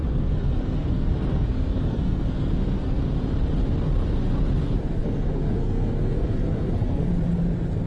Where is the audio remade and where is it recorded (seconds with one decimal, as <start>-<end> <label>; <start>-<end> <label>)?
0.0-3.0 remade; 3.0-5.0 recorded; 5.0-7.1 remade; 7.1-7.9 recorded